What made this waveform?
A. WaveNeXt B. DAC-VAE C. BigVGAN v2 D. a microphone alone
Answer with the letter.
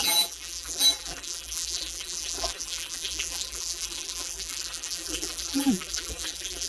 C